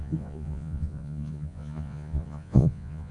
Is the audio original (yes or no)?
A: no